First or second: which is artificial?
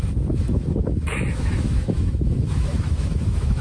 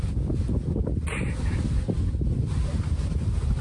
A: first